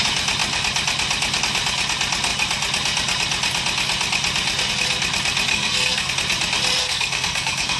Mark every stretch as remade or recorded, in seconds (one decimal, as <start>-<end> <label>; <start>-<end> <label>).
0.0-5.5 recorded; 5.5-6.1 remade; 6.1-6.8 recorded; 6.8-7.8 remade